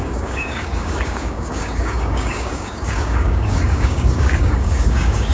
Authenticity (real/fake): fake